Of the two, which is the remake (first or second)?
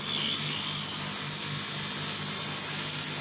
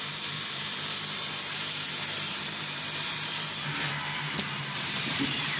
second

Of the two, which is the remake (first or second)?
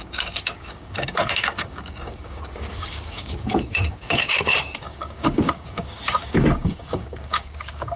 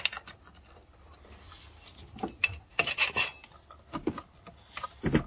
first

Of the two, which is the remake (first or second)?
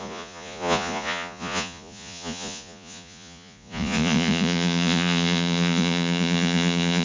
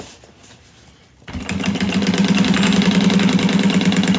first